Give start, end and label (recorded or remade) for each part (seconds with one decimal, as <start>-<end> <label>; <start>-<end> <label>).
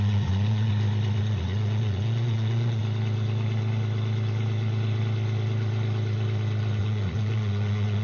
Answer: 0.0-0.7 remade; 0.7-1.2 recorded; 1.2-2.8 remade; 2.8-6.8 recorded; 6.8-8.0 remade